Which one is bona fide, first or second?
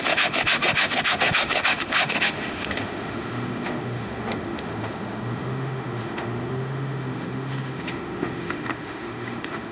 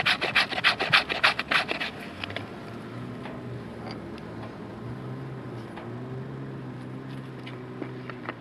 second